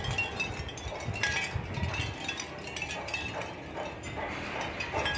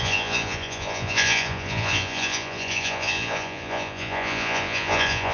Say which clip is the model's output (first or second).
second